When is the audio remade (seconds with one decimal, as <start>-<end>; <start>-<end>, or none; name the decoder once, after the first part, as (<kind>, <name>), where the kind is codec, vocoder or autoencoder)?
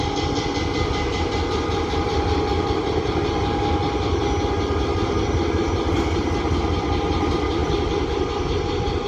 none